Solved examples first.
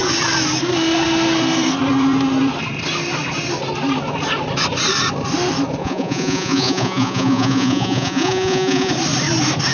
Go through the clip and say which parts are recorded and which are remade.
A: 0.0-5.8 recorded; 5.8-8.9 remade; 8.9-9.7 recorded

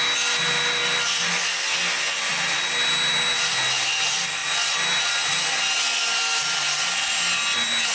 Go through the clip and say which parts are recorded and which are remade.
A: 0.0-7.9 recorded

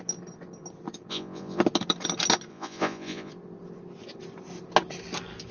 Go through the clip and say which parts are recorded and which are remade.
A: 0.0-1.1 recorded; 1.1-1.6 remade; 1.6-2.5 recorded; 2.5-3.3 remade; 3.3-5.5 recorded